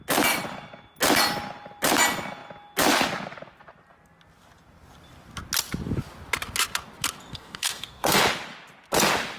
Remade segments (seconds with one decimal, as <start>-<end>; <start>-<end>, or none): 7.3-8.2